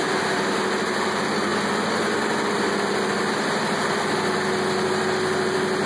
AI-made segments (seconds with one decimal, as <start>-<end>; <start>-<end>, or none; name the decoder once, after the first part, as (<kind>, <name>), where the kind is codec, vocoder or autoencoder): none